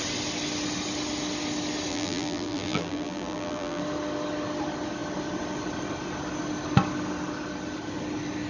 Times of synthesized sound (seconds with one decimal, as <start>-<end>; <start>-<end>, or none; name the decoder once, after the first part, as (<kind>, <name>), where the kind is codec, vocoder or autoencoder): 1.9-3.8 (vocoder, BigVGAN v2)